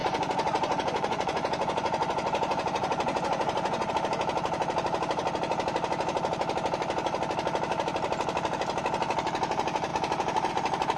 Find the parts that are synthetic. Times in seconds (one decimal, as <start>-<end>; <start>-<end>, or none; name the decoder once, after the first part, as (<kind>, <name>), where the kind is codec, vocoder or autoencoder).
0.0-3.9 (vocoder, Vocos)